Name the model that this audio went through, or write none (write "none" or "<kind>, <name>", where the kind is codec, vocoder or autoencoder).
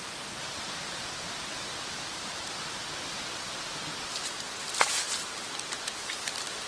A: vocoder, BigVGAN v2